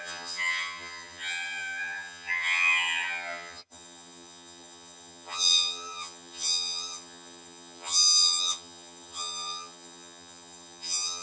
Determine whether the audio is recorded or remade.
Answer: remade